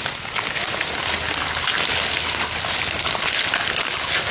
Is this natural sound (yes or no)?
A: yes